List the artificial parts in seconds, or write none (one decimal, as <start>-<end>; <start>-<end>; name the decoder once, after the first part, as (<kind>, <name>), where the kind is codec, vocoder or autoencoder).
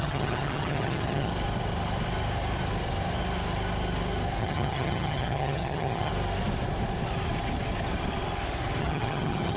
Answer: 0.0-1.3 (vocoder, HiFi-GAN); 4.4-6.1; 8.8-9.6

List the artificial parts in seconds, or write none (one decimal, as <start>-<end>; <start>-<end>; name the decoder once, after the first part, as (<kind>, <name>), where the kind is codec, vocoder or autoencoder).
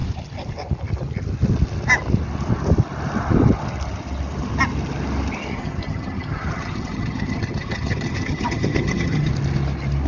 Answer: 5.5-9.3 (vocoder, HiFi-GAN)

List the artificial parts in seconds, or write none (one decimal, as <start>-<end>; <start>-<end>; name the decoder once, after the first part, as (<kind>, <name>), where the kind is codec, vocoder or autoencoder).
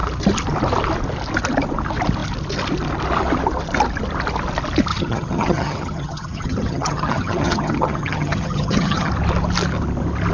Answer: 4.9-9.1 (vocoder, HiFi-GAN)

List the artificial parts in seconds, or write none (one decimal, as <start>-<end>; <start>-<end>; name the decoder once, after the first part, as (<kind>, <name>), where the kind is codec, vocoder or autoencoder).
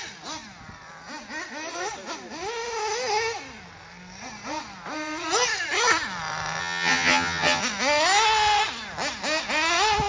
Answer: 6.6-7.6 (vocoder, HiFi-GAN)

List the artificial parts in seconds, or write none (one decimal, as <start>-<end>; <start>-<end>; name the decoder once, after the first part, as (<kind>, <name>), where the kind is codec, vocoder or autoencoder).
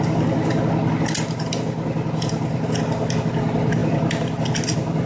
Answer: none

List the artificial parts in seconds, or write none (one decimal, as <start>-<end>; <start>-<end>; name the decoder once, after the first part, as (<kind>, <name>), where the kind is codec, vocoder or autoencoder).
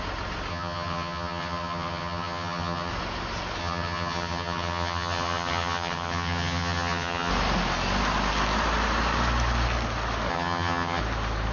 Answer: 0.5-2.9 (vocoder, HiFi-GAN); 3.6-7.3; 10.3-11.0